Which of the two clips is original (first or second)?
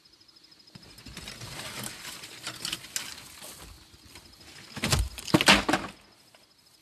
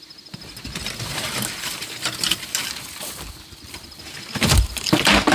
first